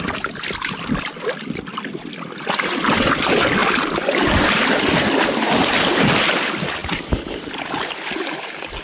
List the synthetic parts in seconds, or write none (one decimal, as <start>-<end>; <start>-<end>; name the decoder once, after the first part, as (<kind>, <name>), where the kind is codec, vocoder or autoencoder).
none